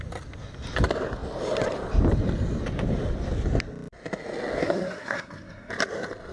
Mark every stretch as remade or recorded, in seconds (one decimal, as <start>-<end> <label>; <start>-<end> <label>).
0.0-4.6 recorded; 4.6-5.7 remade; 5.7-6.3 recorded